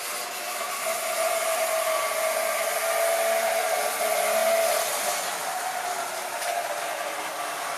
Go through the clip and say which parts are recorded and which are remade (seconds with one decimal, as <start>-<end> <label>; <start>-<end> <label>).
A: 0.0-7.8 recorded